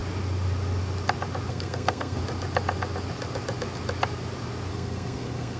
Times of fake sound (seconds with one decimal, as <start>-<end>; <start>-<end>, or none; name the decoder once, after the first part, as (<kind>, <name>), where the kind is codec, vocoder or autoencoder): 1.5-2.2 (codec, SNAC); 4.7-5.6